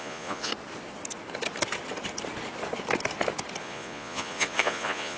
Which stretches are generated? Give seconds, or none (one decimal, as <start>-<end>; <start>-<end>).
0.0-0.5; 3.6-5.2